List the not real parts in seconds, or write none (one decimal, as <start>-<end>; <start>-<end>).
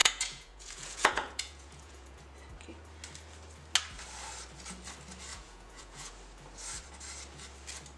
0.0-2.2; 5.3-6.1